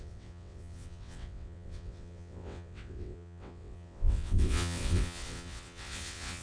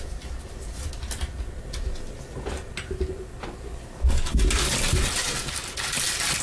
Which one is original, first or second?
second